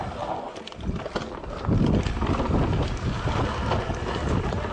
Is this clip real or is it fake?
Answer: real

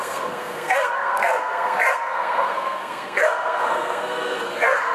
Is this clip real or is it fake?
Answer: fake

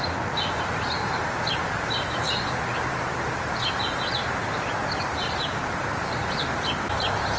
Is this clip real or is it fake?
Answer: real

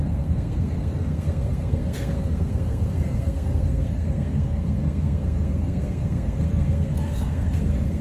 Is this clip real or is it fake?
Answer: fake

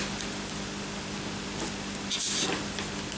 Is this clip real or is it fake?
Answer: real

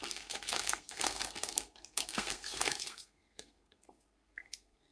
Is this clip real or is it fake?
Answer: fake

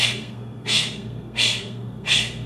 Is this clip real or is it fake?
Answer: fake